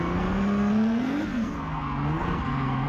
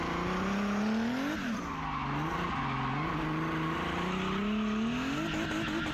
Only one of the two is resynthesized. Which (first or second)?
first